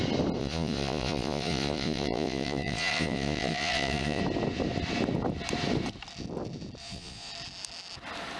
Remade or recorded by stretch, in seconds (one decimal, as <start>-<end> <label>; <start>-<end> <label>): 0.0-0.4 recorded; 0.4-4.2 remade; 4.2-6.8 recorded; 6.8-7.3 remade; 7.3-8.4 recorded